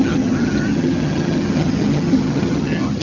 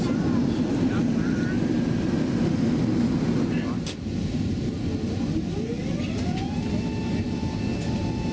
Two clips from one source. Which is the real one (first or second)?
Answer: second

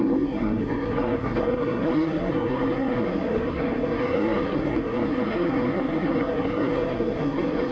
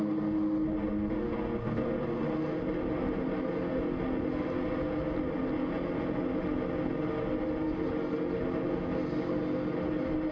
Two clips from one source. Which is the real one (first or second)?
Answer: second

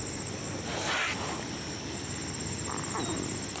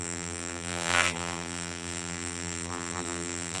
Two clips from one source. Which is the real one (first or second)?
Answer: first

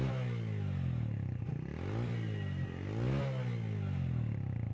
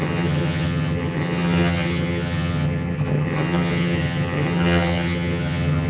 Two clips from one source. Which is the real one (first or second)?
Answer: first